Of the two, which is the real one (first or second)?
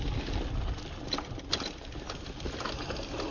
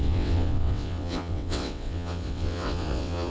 first